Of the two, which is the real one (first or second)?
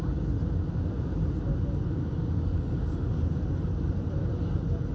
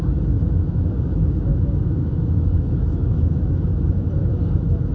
first